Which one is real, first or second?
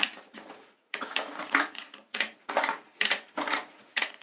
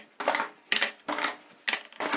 second